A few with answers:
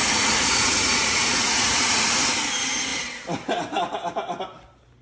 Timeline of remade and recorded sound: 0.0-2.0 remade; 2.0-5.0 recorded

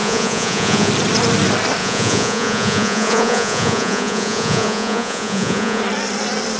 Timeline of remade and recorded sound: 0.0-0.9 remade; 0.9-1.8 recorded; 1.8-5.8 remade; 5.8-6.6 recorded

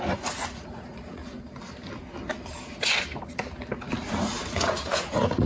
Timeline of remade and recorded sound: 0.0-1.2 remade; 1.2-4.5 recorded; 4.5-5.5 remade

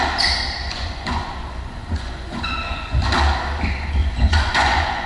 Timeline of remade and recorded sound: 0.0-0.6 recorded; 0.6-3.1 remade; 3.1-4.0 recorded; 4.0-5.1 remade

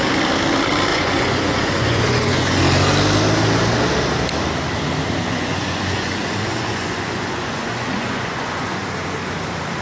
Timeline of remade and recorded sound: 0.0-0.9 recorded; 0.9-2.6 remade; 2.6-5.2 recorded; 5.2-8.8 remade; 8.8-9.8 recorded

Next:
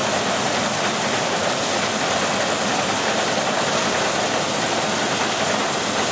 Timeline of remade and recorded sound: 0.0-6.1 recorded

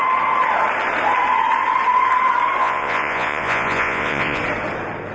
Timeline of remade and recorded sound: 0.0-2.6 recorded; 2.6-4.4 remade; 4.4-5.1 recorded

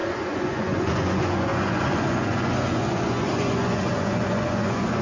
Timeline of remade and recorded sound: 0.0-5.0 remade